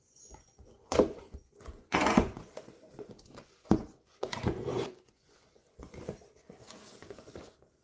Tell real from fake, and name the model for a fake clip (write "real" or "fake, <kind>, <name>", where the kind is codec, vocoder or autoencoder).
fake, vocoder, Vocos